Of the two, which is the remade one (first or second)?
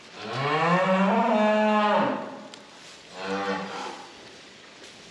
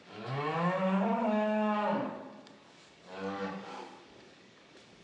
second